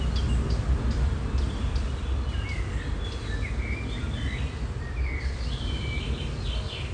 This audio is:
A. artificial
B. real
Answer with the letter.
B